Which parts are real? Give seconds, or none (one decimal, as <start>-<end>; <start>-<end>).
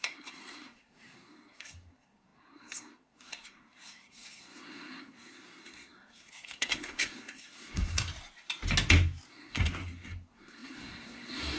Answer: 8.1-9.3